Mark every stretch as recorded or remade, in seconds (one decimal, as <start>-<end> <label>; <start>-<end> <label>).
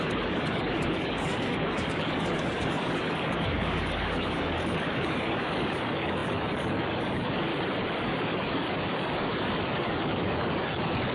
0.0-7.5 remade; 7.5-8.0 recorded; 8.0-11.1 remade